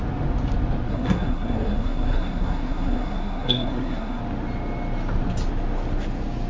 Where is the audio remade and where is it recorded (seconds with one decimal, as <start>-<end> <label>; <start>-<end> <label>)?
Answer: 0.0-0.9 recorded; 0.9-4.2 remade; 4.2-6.5 recorded